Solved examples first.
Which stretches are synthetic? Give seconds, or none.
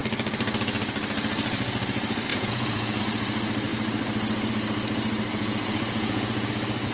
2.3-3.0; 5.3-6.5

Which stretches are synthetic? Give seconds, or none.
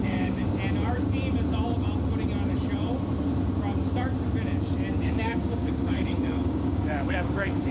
0.0-0.4; 5.0-7.7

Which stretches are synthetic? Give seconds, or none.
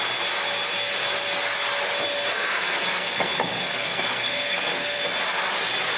2.3-5.0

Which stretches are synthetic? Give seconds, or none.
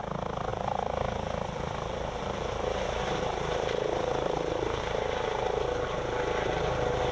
0.5-4.8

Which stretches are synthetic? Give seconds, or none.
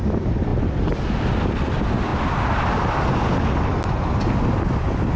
none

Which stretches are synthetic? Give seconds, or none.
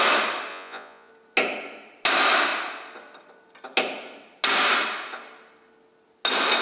0.5-1.1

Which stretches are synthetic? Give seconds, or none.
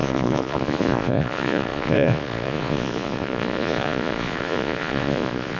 0.0-5.6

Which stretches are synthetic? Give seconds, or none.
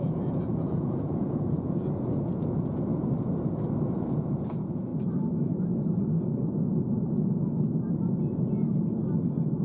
0.0-2.9; 4.1-4.9